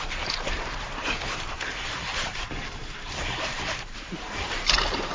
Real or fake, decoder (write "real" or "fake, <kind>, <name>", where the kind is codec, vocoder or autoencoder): fake, vocoder, BigVGAN v2